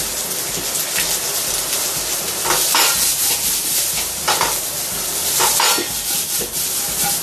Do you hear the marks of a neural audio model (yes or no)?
no